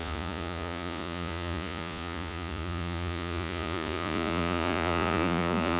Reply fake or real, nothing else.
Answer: fake